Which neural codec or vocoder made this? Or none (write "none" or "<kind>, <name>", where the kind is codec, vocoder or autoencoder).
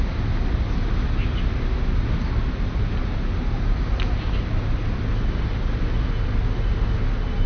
none